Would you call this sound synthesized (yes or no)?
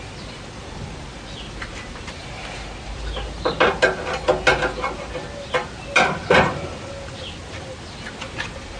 no